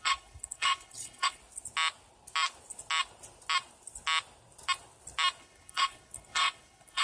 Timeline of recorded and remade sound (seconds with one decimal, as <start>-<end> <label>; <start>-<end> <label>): 0.0-1.4 remade; 1.4-5.4 recorded; 5.4-7.0 remade